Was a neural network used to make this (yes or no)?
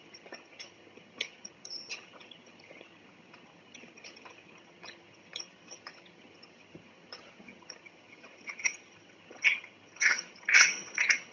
yes